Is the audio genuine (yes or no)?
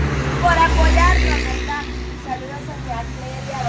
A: yes